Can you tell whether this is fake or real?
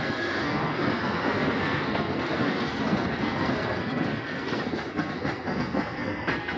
fake